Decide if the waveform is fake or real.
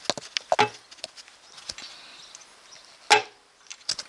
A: real